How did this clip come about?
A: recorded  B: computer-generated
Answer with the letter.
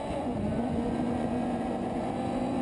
B